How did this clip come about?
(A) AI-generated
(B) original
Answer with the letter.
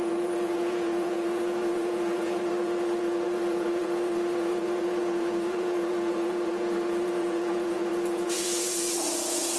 A